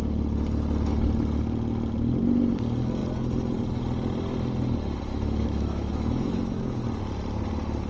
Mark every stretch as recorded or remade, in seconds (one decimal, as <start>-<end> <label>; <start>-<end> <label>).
0.0-5.1 recorded; 5.1-6.8 remade; 6.8-7.9 recorded